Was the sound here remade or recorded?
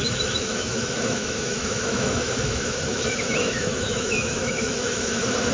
remade